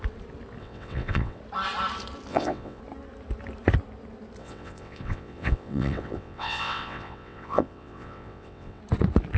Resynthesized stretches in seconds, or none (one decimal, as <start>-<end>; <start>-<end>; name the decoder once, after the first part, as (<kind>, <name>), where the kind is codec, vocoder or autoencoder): 0.6-1.4 (vocoder, WaveNeXt); 2.3-2.8; 4.4-8.8